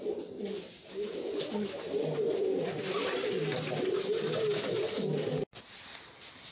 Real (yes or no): yes